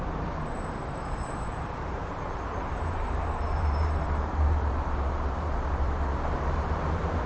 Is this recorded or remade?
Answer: remade